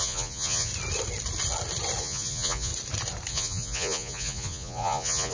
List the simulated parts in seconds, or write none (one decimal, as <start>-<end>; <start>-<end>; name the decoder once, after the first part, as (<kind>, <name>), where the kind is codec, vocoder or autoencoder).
0.0-0.7 (vocoder, Vocos); 2.0-2.7; 3.3-5.3

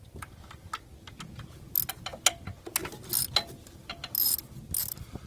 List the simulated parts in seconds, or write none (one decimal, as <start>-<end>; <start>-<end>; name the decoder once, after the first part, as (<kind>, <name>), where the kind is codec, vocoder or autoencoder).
none

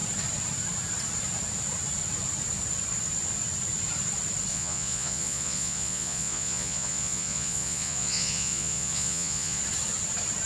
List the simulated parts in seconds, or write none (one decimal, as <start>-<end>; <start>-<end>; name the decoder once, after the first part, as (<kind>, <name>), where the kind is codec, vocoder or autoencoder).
4.5-9.6 (vocoder, Vocos)

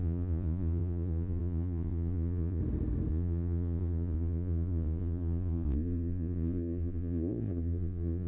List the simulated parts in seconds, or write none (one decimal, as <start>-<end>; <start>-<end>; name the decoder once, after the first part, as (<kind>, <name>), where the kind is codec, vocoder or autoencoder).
0.0-2.6 (vocoder, Vocos); 3.1-8.3

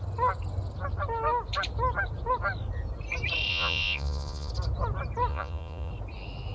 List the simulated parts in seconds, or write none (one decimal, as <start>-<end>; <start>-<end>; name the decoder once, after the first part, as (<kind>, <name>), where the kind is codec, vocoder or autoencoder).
3.5-4.5 (vocoder, Vocos); 5.3-5.9

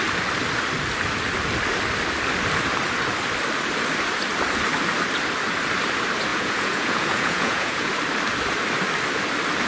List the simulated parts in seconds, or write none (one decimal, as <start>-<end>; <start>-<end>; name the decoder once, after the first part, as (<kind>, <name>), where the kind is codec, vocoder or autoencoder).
6.3-7.9 (vocoder, Vocos)